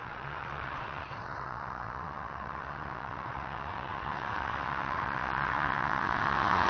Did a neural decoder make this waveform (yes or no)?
yes